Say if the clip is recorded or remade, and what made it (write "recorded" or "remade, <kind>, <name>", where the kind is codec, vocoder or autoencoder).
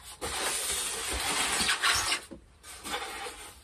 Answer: recorded